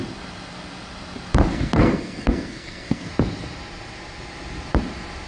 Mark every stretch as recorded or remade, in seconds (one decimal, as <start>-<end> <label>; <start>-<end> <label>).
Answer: 0.0-1.5 recorded; 1.5-3.1 remade; 3.1-5.3 recorded